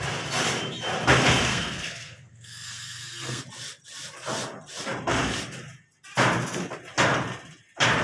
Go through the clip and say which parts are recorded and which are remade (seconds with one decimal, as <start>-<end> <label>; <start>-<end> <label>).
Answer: 0.0-1.5 recorded; 1.5-3.4 remade; 3.4-8.0 recorded